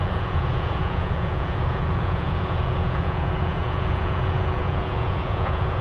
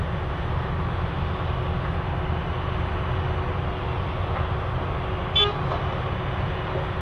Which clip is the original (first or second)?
second